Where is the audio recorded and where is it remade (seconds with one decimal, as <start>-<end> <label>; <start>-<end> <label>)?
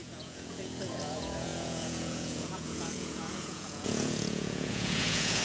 0.0-5.4 remade